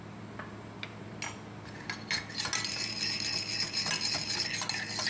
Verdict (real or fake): real